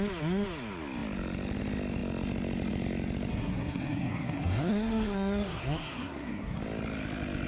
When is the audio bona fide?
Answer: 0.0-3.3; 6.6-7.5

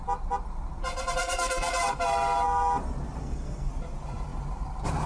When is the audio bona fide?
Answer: 0.0-1.2; 1.8-3.2; 3.7-5.1

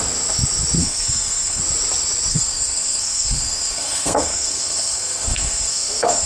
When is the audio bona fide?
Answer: 0.0-0.8; 1.6-2.3

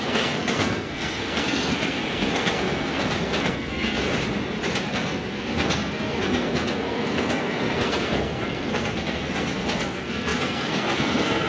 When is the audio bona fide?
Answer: 4.1-4.8

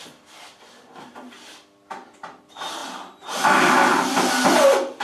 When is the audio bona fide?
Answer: 0.0-5.0